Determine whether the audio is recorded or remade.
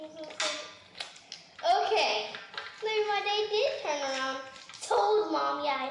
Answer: recorded